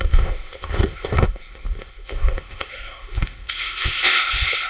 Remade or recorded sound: remade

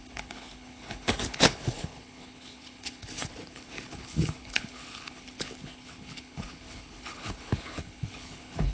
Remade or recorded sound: remade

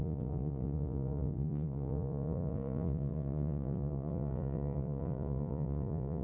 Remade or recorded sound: remade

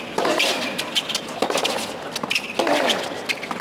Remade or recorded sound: recorded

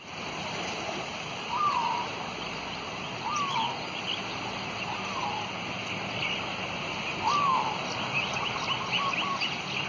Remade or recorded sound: recorded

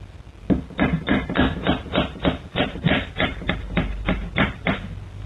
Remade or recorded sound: recorded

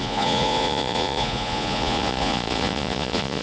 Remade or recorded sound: remade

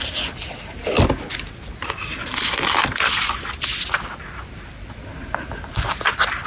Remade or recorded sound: recorded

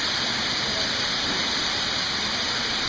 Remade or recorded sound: recorded